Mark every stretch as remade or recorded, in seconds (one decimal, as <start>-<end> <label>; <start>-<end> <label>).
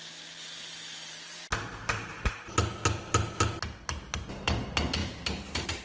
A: 0.0-5.0 recorded; 5.0-5.8 remade